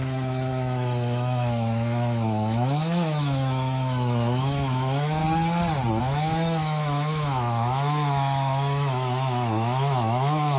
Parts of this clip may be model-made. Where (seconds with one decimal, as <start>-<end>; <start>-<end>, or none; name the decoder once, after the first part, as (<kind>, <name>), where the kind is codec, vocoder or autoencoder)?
0.0-5.2 (autoencoder, DAC-VAE); 6.0-10.6